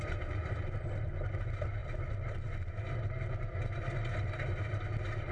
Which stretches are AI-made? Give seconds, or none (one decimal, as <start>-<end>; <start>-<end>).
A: none